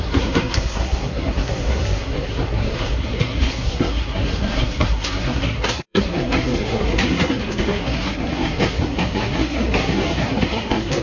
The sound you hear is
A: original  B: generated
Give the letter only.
B